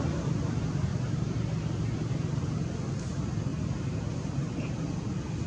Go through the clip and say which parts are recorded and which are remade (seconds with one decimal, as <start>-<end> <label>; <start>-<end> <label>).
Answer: 0.0-0.9 recorded; 0.9-2.4 remade; 2.4-3.5 recorded; 3.5-4.8 remade; 4.8-5.5 recorded